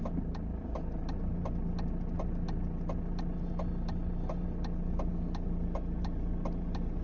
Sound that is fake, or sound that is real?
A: real